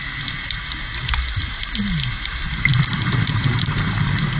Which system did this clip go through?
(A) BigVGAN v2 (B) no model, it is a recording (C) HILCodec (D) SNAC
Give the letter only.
B